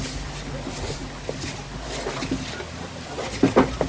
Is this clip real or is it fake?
real